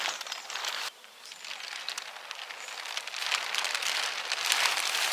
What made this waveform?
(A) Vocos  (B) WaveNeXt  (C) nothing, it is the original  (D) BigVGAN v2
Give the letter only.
C